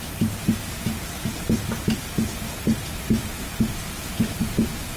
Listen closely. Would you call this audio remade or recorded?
recorded